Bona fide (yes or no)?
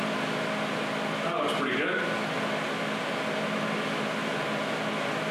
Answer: yes